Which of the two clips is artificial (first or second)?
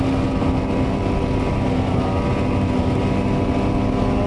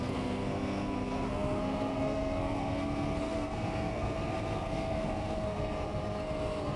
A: second